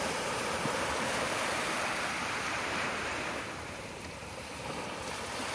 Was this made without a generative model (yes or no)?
no